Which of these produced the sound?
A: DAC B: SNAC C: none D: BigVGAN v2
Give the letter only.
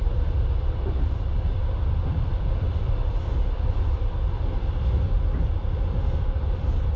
D